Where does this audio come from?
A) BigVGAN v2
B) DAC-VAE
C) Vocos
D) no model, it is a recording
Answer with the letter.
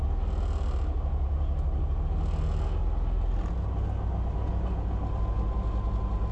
D